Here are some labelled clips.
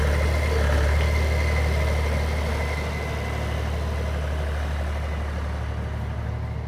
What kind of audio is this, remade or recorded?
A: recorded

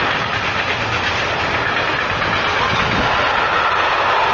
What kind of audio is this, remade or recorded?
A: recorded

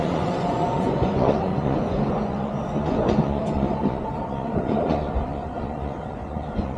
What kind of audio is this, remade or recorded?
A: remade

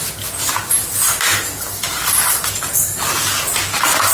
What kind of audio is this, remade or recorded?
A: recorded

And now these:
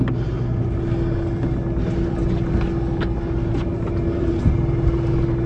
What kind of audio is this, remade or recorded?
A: recorded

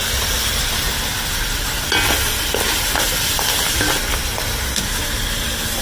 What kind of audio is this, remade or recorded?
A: recorded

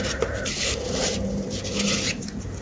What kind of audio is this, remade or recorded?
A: remade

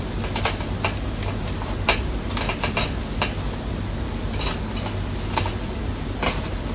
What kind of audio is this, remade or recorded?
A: recorded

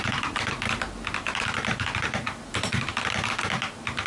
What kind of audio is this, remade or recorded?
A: remade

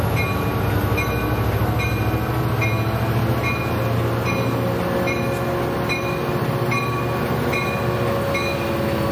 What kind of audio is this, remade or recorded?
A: recorded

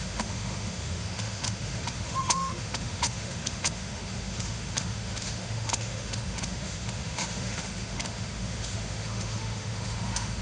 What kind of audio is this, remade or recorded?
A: remade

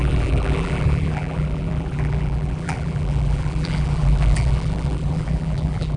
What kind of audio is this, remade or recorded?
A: remade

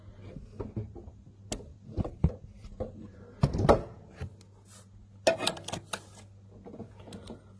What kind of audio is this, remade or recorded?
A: recorded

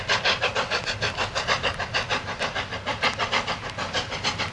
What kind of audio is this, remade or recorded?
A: recorded